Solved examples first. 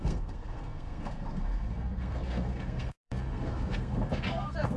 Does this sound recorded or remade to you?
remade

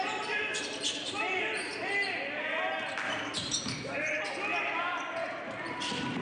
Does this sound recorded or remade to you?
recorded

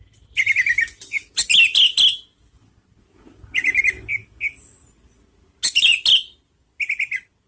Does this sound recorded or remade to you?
recorded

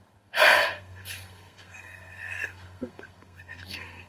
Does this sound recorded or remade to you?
remade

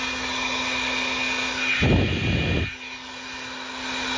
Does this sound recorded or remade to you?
recorded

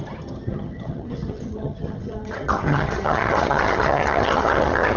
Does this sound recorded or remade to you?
remade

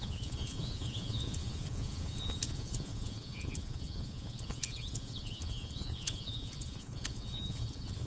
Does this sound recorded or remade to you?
remade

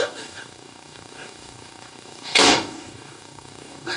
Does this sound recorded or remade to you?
remade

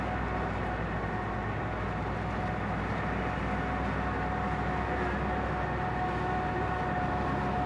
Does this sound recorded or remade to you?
recorded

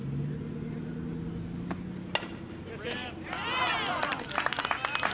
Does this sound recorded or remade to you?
recorded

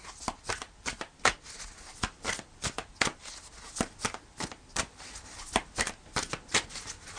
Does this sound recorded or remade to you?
recorded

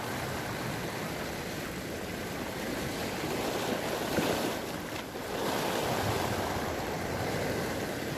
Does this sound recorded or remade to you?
recorded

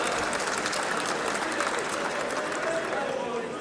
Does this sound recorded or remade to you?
recorded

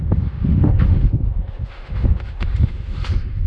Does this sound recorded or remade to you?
remade